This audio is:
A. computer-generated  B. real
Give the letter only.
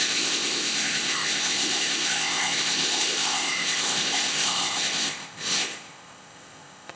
A